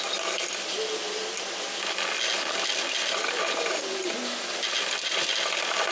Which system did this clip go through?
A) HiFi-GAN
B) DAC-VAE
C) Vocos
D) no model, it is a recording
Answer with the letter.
D